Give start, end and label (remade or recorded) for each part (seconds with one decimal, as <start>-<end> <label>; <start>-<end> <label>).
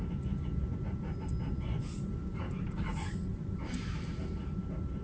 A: 0.0-3.3 recorded; 3.3-4.1 remade; 4.1-5.0 recorded